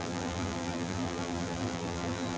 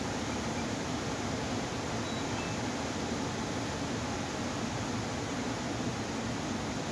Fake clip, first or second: first